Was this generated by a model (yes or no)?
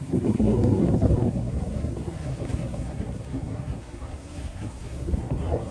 yes